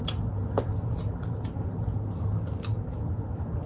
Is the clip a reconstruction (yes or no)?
no